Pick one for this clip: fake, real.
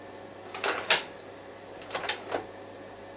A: real